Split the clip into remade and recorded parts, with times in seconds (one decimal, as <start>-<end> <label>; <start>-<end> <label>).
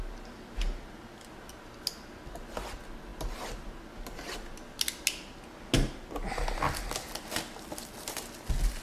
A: 0.0-8.8 recorded